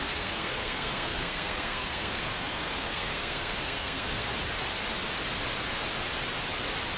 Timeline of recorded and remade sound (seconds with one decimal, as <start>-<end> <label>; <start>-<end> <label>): 0.0-4.3 remade; 4.3-7.0 recorded